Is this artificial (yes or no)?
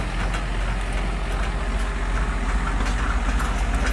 no